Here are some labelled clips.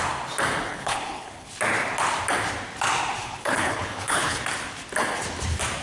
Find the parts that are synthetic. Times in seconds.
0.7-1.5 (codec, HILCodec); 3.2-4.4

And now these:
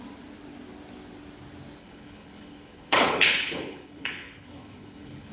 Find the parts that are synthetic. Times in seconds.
1.8-5.3 (codec, HILCodec)

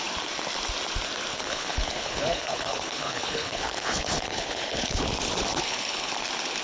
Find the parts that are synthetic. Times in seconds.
1.3-5.1 (codec, HILCodec); 5.5-6.1

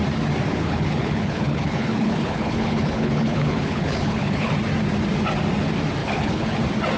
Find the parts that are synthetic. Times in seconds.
0.5-4.5 (codec, HILCodec); 6.0-6.6